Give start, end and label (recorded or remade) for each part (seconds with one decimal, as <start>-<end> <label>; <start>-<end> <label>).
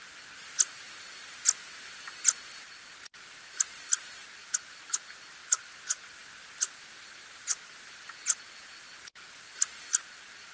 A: 0.0-10.5 recorded